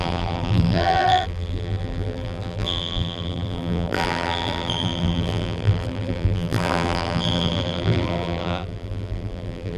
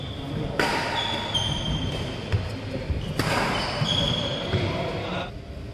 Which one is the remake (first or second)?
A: first